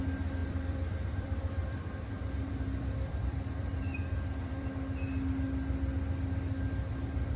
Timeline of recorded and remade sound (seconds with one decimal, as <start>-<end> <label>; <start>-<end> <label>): 0.0-0.4 recorded; 0.4-4.7 remade; 4.7-7.4 recorded